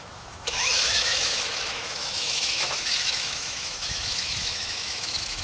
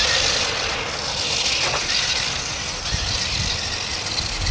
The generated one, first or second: first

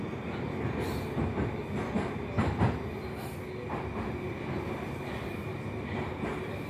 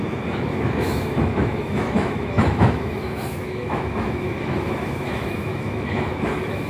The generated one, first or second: second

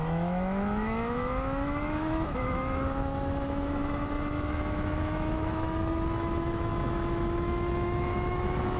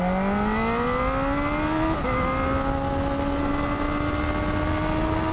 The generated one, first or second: first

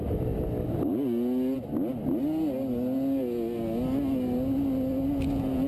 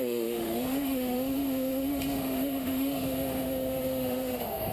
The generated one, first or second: second